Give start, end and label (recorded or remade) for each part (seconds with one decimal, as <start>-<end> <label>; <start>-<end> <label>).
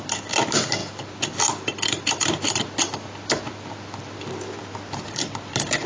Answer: 0.0-0.8 recorded; 0.8-4.3 remade; 4.3-5.9 recorded